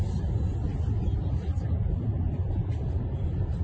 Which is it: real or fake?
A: real